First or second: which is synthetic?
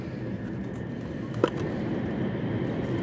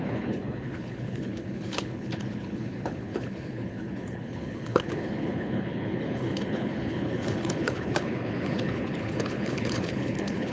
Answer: second